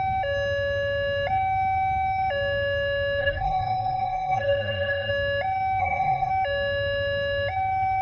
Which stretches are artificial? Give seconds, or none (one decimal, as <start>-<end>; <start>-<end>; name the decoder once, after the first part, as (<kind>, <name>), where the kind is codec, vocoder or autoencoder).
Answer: 3.2-5.1 (codec, SNAC); 5.8-6.3